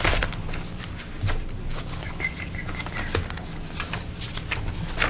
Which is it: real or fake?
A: real